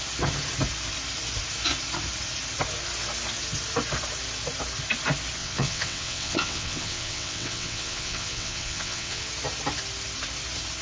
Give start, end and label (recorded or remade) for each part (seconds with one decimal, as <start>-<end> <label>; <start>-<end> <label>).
0.0-5.4 recorded; 5.4-9.3 remade; 9.3-10.8 recorded